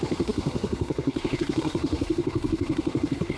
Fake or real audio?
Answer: fake